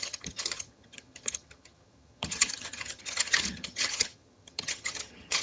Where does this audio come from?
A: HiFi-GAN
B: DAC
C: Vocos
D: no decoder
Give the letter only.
A